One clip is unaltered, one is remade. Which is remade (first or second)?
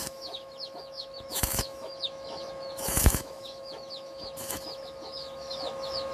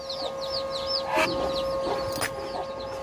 first